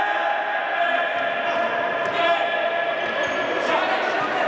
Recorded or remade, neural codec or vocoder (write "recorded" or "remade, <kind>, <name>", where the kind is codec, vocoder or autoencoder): recorded